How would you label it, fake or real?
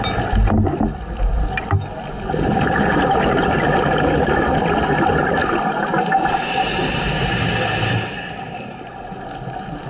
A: real